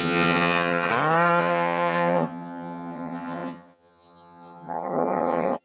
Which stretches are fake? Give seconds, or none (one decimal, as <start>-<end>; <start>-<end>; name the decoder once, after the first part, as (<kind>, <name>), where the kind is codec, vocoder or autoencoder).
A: 0.0-0.9 (vocoder, HiFi-GAN); 1.4-5.6